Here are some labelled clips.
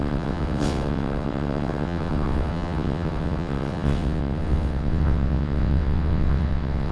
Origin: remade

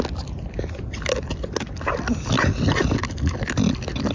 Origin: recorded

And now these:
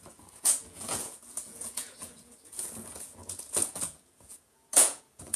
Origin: remade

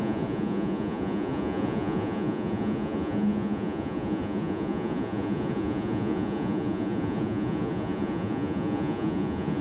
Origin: remade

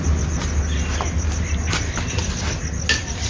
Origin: recorded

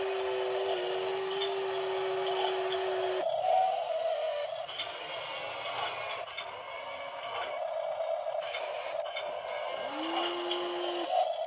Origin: recorded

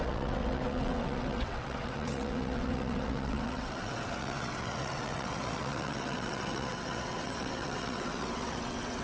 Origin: remade